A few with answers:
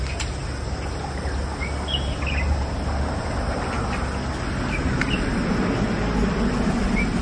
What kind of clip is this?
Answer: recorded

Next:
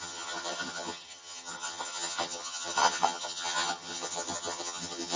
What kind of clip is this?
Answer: remade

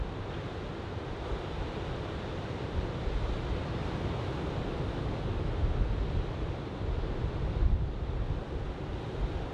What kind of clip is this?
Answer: recorded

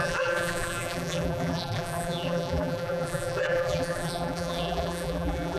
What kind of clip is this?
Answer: remade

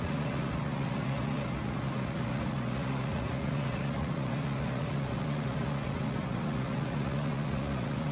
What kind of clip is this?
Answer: remade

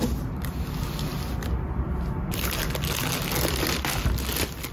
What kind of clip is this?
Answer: recorded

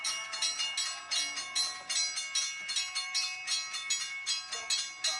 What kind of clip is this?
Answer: recorded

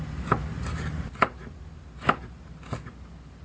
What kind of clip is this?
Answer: recorded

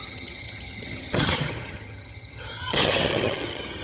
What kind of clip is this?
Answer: remade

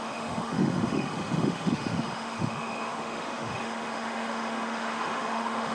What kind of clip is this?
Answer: remade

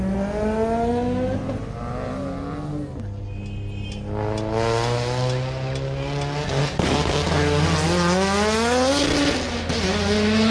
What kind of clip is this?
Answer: recorded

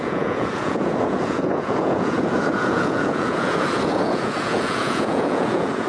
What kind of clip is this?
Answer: remade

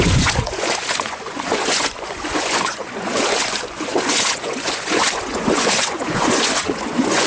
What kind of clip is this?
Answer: remade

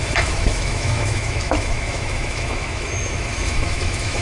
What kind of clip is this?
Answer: remade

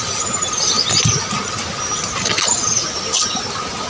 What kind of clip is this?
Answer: recorded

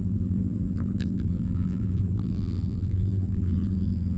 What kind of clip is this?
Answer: remade